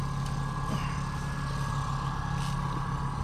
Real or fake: real